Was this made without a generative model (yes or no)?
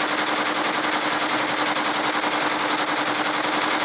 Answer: yes